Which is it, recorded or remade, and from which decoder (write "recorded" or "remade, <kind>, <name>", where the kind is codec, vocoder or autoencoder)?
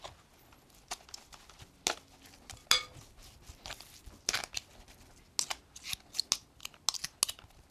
recorded